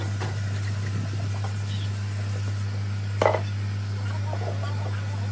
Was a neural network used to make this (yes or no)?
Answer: no